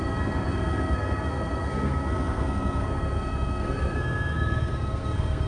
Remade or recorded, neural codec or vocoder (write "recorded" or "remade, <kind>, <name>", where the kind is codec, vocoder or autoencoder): remade, codec, SNAC